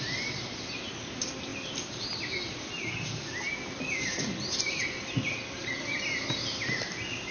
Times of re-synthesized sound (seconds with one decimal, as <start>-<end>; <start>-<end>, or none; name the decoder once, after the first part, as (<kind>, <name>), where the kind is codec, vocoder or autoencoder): none